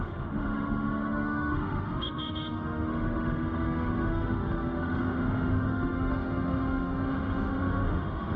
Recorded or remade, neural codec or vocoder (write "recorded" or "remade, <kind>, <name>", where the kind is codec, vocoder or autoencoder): remade, autoencoder, DAC-VAE